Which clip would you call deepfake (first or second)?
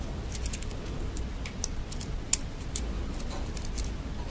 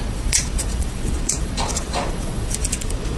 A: second